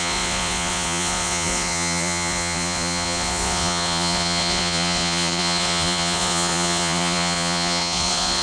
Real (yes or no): no